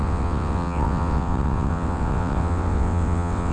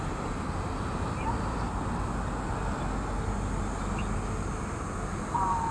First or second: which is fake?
first